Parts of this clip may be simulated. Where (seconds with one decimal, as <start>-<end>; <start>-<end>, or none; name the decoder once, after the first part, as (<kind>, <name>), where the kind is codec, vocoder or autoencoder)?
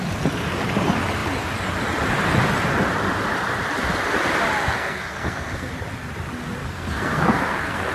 4.6-5.7 (codec, SNAC); 6.6-7.9